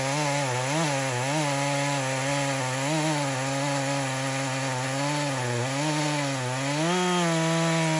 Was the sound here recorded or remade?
recorded